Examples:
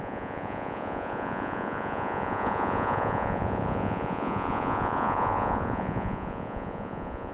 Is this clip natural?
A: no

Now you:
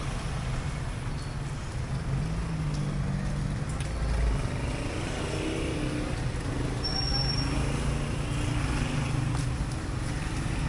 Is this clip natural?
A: yes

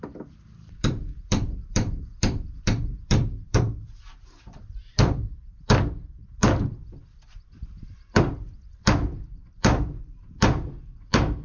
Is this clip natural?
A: no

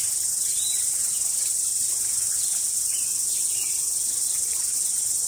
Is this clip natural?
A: yes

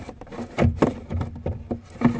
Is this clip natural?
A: yes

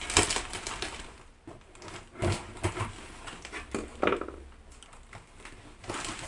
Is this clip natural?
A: yes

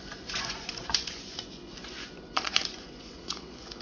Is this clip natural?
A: no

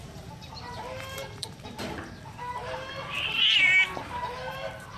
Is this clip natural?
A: no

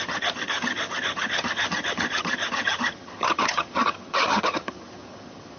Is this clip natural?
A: no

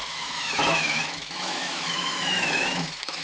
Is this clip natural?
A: no